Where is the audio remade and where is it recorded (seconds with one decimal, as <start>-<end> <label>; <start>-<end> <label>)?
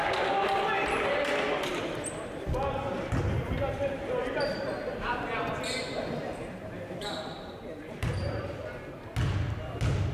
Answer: 0.0-6.2 recorded; 6.2-8.4 remade; 8.4-10.1 recorded